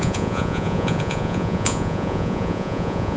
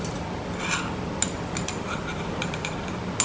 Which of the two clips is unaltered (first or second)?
second